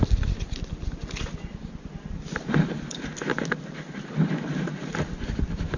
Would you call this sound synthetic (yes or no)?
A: no